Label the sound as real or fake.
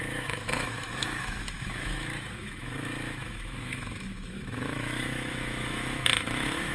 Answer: fake